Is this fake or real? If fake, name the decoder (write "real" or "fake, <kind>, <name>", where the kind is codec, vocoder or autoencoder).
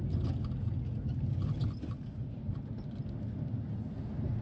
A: real